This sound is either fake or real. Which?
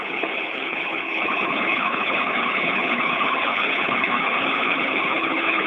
fake